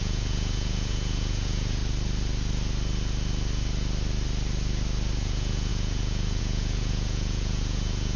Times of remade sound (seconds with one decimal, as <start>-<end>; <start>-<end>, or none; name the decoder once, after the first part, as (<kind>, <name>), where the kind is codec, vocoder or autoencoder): 0.0-1.8 (vocoder, Vocos); 5.2-8.2